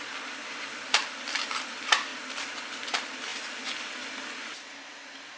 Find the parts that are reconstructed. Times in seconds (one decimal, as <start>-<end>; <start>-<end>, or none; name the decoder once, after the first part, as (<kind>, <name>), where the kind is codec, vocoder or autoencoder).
0.0-2.1 (vocoder, BigVGAN v2); 2.6-5.4